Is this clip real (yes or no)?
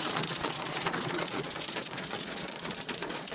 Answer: no